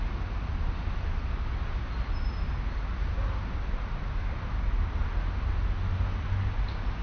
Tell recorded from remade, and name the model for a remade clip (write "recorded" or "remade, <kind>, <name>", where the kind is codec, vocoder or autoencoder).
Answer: recorded